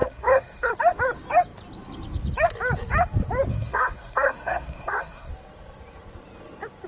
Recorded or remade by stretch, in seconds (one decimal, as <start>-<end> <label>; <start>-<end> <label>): 0.0-0.7 remade; 0.7-3.5 recorded; 3.5-5.3 remade; 5.3-6.9 recorded